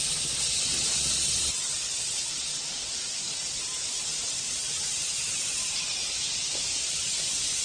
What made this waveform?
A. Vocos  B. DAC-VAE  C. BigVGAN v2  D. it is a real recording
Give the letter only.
D